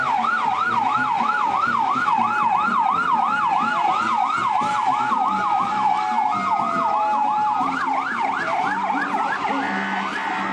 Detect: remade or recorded recorded